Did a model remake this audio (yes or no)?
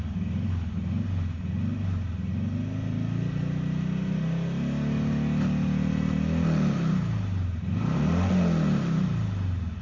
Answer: no